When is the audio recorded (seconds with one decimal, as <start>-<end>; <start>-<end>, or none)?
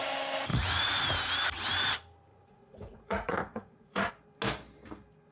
0.0-0.5; 1.0-2.3; 4.1-5.3